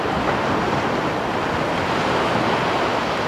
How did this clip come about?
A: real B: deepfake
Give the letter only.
A